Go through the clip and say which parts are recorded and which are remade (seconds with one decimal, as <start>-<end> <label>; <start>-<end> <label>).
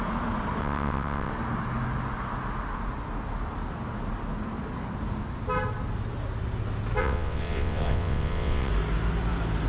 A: 0.0-0.6 recorded; 0.6-1.3 remade; 1.3-7.0 recorded; 7.0-8.7 remade; 8.7-9.7 recorded